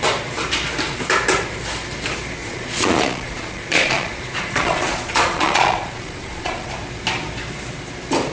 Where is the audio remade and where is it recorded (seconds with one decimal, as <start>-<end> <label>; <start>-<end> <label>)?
0.0-2.4 recorded; 2.4-6.7 remade; 6.7-8.3 recorded